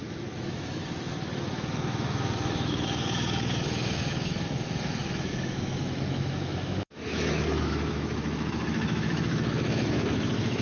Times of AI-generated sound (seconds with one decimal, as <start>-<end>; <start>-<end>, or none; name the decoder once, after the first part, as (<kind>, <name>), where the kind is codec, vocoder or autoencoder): 0.0-10.6 (autoencoder, DAC-VAE)